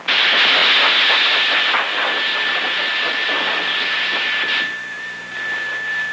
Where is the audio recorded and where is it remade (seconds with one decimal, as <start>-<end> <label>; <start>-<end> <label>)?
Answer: 0.0-6.1 recorded